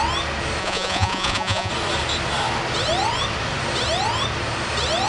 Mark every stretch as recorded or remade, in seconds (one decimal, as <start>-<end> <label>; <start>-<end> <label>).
0.0-0.6 recorded; 0.6-1.7 remade; 1.7-5.1 recorded